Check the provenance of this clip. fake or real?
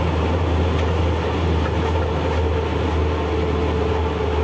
real